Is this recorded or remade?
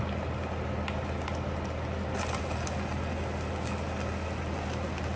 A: recorded